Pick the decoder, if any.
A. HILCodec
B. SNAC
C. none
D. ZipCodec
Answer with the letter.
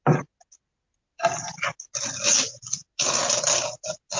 C